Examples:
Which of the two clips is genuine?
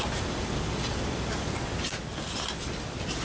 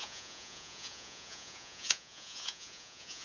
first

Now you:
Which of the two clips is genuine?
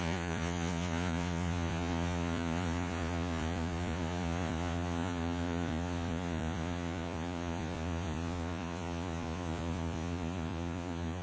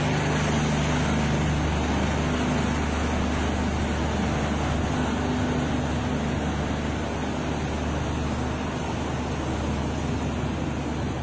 second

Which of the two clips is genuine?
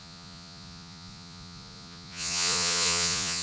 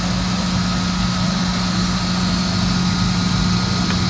second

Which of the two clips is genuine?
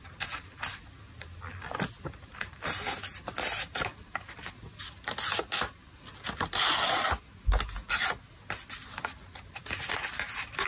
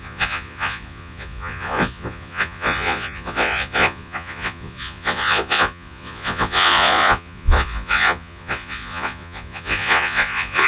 first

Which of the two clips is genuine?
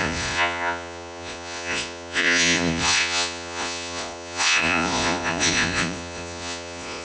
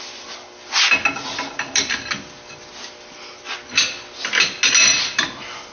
second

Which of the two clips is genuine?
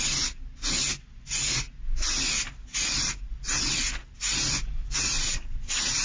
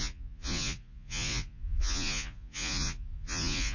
first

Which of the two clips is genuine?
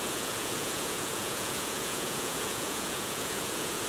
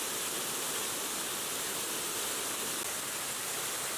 second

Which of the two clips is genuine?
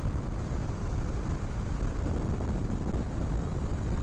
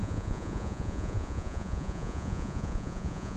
first